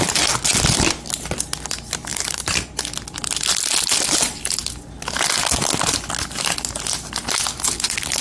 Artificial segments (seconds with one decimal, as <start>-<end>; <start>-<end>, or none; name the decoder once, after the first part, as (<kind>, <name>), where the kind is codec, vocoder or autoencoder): 2.1-2.8 (vocoder, BigVGAN v2)